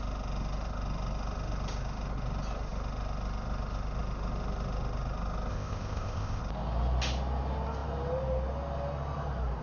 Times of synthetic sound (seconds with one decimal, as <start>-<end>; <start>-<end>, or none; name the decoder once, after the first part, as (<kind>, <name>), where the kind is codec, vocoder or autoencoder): 5.5-6.4 (codec, ZipCodec)